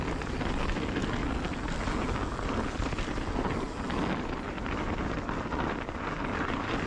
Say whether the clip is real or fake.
real